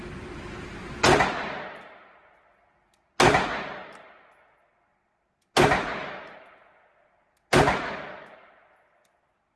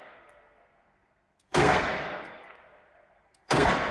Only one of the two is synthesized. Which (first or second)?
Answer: second